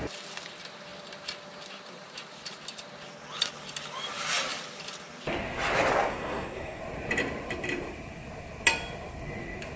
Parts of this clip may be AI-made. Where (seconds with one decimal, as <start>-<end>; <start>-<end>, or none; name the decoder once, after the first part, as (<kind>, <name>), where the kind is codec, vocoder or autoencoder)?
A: 6.1-6.8 (codec, SNAC)

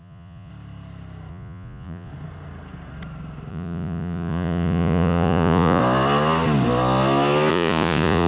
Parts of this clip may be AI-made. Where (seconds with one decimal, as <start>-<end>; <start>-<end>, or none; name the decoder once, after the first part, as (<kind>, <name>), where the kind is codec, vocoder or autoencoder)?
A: 0.0-0.5 (vocoder, Vocos); 1.3-2.1; 3.5-5.8; 7.5-8.3

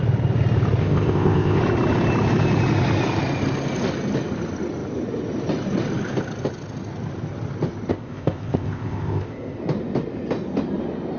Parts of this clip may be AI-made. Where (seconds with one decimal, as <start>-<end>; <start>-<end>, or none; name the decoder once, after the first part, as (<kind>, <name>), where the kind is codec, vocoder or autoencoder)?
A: 0.8-1.6 (codec, ZipCodec); 7.9-9.6